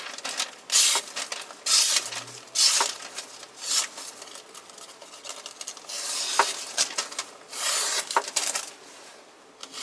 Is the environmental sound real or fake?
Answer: real